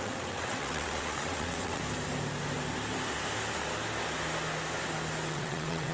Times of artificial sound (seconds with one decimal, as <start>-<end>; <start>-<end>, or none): 0.0-1.8; 5.3-5.9